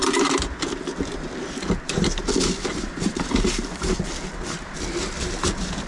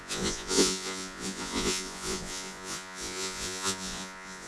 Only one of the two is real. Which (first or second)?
first